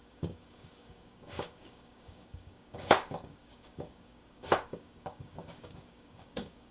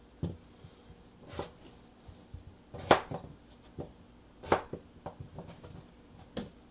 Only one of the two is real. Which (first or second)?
second